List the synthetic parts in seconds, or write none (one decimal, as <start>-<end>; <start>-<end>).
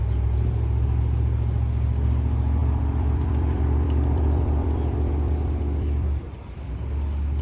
2.6-6.7